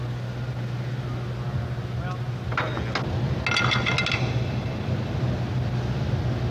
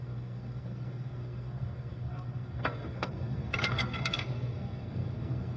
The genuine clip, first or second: first